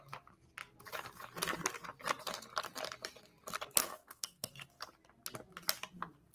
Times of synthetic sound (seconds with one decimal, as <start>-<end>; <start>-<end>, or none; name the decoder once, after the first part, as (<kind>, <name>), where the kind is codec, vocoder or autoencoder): 3.8-4.5 (codec, SNAC)